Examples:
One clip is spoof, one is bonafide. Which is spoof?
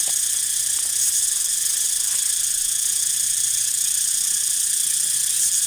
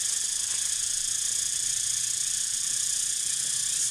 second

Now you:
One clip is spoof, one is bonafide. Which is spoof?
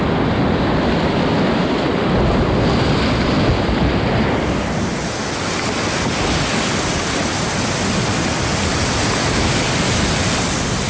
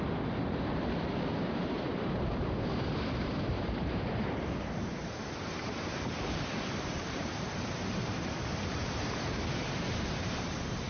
second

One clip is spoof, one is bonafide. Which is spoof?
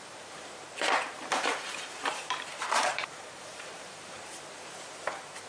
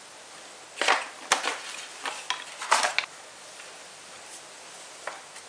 first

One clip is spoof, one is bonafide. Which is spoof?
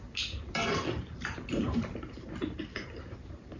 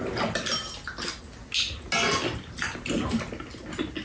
first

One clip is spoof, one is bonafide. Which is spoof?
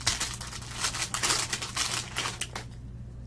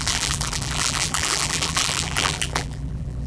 second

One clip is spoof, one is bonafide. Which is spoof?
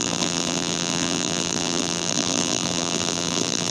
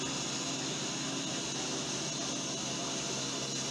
first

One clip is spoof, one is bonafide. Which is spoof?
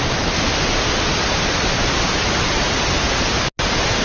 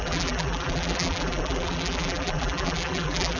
second